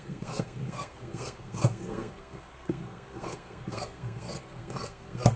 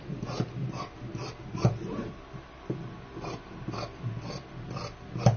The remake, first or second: first